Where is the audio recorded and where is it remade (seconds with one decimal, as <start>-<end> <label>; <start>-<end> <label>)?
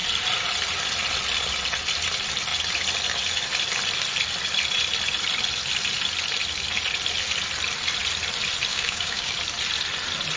0.0-8.7 recorded; 8.7-9.3 remade; 9.3-10.4 recorded